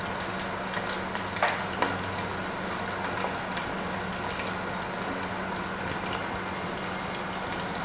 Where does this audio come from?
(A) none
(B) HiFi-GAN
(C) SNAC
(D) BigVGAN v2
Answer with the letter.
A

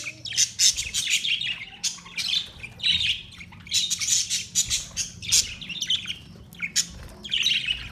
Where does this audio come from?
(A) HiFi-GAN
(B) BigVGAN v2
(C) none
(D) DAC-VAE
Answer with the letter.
C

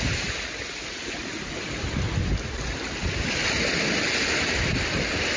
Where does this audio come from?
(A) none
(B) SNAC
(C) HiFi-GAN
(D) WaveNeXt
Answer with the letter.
A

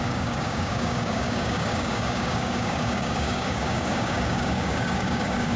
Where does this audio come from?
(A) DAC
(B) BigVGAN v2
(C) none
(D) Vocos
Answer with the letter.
A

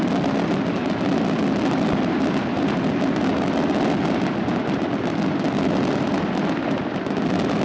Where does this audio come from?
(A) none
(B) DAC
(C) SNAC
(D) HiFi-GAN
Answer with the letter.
A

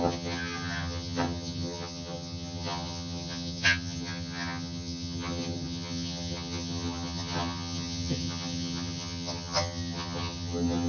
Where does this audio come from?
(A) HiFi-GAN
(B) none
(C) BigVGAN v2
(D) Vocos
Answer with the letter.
A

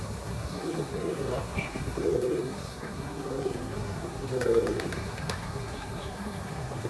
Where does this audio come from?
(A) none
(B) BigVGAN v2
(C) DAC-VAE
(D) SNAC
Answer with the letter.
D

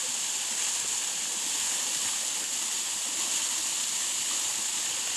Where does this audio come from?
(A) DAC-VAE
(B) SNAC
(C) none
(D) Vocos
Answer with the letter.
C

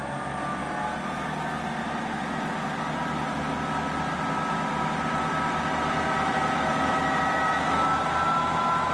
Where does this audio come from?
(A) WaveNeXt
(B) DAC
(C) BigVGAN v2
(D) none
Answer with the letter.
D